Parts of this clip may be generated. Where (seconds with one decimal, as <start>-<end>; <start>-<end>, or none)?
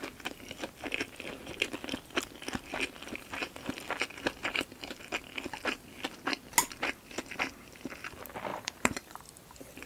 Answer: 8.5-9.2